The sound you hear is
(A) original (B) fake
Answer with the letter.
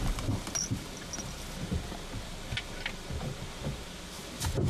A